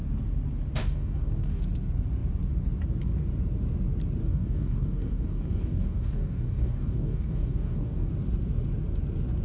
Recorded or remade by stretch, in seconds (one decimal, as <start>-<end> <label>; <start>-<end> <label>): 0.0-0.8 recorded; 0.8-1.6 remade; 1.6-4.2 recorded; 4.2-8.1 remade; 8.1-9.4 recorded